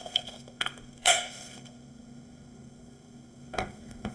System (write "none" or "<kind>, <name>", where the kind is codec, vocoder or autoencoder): codec, SNAC